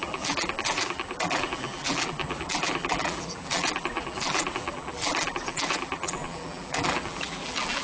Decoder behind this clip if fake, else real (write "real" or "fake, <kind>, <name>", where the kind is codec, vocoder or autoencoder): fake, vocoder, BigVGAN v2